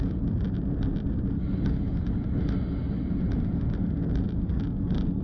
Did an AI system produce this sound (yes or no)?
no